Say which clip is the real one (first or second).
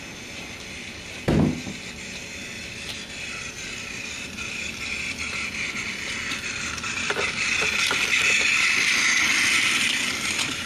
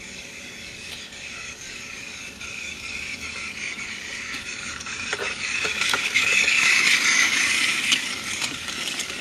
first